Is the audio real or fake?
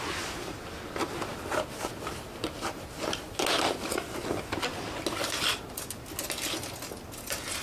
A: real